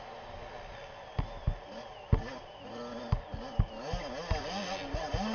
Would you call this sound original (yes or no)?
yes